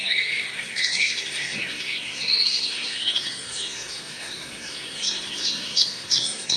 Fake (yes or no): yes